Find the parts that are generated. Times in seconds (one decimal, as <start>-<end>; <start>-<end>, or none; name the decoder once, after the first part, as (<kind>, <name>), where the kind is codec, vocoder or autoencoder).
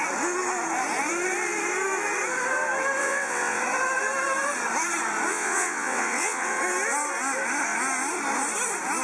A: 3.0-3.6 (vocoder, WaveNeXt); 5.3-6.6